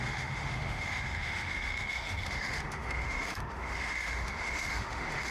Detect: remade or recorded remade